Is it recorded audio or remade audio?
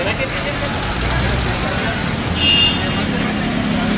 recorded